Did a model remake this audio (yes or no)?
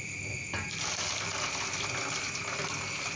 no